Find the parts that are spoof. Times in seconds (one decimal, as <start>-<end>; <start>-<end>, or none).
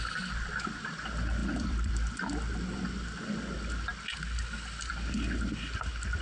1.4-1.9